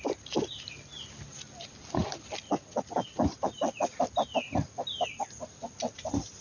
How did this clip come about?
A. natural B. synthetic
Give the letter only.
A